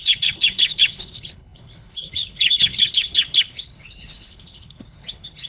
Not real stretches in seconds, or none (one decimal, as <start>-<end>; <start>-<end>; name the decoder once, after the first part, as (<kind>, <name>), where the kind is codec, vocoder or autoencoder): 0.0-5.5 (codec, HILCodec)